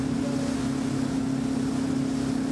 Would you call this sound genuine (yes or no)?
yes